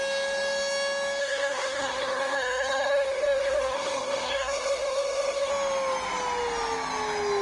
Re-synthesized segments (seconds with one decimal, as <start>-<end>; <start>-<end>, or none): 1.2-5.5